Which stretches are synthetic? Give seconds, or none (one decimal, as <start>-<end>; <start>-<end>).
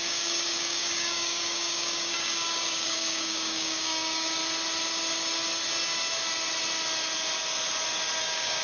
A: 0.0-4.4; 8.2-8.6